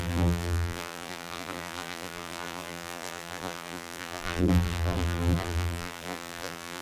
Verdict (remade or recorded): remade